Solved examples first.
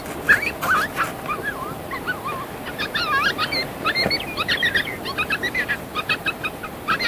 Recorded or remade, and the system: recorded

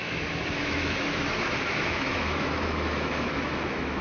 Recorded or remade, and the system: remade, autoencoder, DAC-VAE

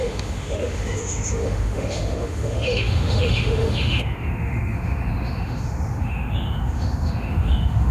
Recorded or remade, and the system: remade, autoencoder, DAC-VAE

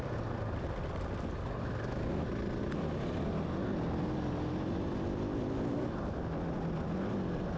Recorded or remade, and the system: recorded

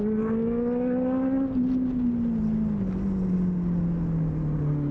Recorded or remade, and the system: recorded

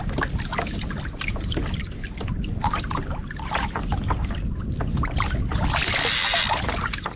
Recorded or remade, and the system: recorded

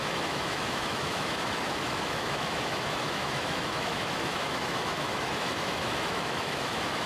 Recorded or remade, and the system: remade, autoencoder, DAC-VAE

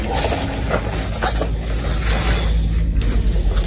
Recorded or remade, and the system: recorded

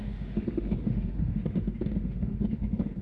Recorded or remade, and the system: remade, autoencoder, DAC-VAE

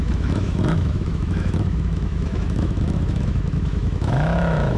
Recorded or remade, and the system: remade, autoencoder, DAC-VAE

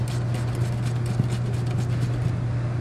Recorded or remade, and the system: recorded